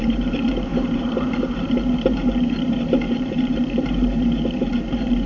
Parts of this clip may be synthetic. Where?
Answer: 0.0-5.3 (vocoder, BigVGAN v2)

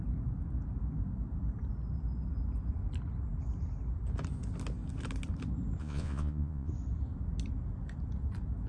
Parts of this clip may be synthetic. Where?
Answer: 5.8-6.7 (vocoder, Vocos)

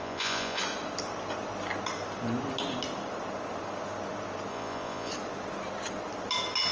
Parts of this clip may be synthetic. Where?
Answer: 0.0-0.6 (vocoder, Vocos); 4.5-5.1

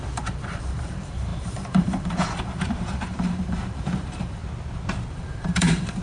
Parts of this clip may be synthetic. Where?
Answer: 0.0-4.4 (vocoder, BigVGAN v2); 5.1-6.0

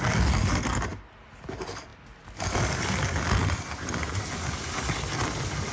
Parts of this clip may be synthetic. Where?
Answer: none

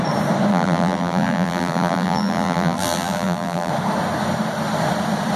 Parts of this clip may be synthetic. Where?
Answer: 0.5-3.7 (vocoder, BigVGAN v2)

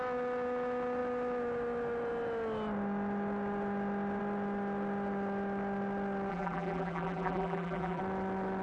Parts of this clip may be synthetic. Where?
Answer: 6.3-8.0 (vocoder, BigVGAN v2)